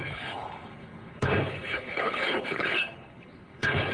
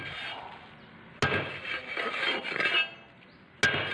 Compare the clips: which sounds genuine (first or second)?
second